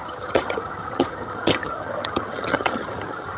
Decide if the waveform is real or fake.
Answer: fake